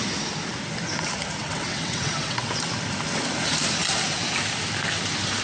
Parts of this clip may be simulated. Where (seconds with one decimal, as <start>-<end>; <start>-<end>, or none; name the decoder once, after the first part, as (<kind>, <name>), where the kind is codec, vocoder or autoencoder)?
1.4-2.6 (vocoder, WaveNeXt)